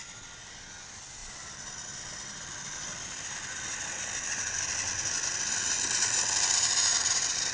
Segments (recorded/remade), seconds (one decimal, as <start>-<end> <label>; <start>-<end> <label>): 0.0-7.5 remade